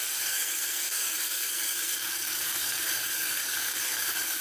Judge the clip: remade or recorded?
remade